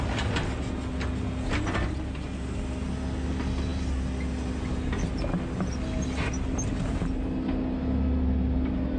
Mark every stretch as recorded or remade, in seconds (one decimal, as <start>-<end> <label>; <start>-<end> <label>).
0.0-9.0 recorded